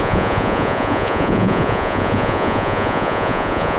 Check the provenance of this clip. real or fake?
fake